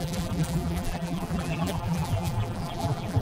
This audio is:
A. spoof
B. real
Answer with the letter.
A